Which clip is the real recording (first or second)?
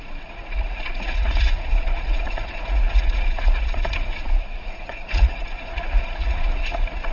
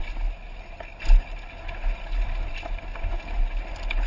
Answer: second